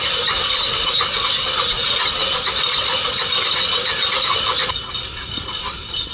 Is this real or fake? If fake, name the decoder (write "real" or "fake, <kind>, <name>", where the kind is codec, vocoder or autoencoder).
real